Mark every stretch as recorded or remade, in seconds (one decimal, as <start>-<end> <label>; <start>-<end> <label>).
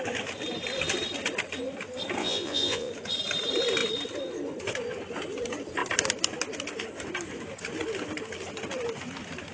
0.0-2.2 recorded; 2.2-2.9 remade; 2.9-9.5 recorded